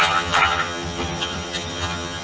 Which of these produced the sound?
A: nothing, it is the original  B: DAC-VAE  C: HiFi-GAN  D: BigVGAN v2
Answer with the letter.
C